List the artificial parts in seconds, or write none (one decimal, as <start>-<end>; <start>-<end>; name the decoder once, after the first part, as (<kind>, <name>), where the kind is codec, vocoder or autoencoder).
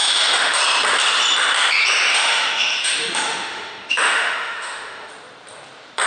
0.0-0.6 (autoencoder, DAC-VAE); 2.1-5.1